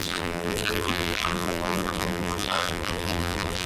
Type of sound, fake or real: fake